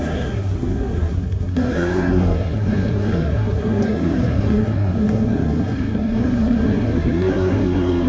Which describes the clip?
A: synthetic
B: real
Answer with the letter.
A